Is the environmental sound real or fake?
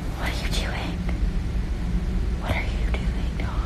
fake